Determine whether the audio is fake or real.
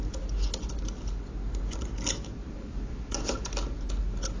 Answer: real